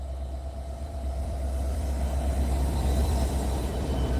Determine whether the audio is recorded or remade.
remade